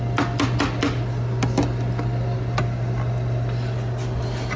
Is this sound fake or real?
real